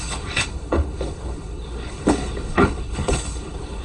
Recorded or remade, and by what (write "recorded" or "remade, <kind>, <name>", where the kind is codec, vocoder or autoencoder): remade, codec, HILCodec